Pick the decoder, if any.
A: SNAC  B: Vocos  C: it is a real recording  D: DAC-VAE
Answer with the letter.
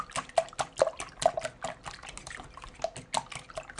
C